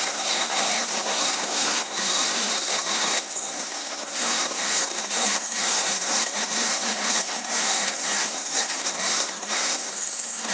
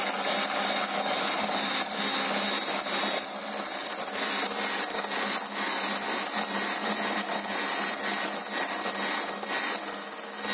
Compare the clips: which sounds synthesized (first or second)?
first